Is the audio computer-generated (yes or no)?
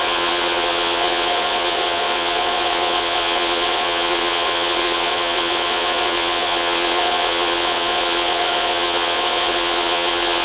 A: yes